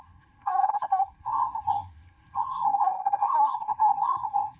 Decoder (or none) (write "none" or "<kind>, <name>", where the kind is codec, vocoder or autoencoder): codec, SNAC